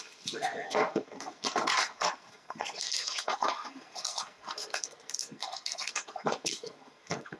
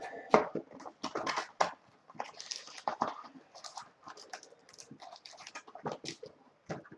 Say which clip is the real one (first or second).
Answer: second